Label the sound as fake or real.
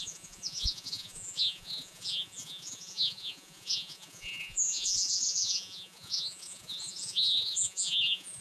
fake